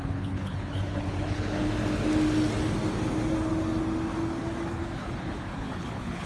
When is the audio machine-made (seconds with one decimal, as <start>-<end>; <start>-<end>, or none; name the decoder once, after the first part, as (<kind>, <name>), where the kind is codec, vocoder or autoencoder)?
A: 0.0-1.7 (codec, HILCodec); 4.7-6.3